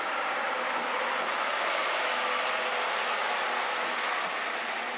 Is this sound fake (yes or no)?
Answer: no